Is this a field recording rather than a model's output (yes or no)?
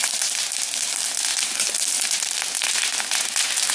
yes